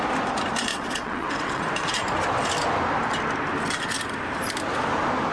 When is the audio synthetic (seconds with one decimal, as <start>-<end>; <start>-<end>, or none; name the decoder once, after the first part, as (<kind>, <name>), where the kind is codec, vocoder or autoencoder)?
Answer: 0.7-1.6 (vocoder, WaveNeXt)